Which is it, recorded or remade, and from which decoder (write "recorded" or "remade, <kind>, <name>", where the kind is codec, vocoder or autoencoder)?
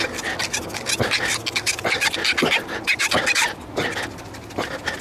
recorded